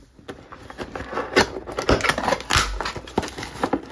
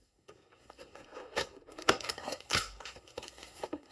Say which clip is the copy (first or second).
second